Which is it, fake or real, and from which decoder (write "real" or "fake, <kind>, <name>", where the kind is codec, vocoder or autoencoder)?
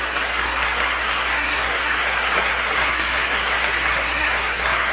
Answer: fake, codec, SNAC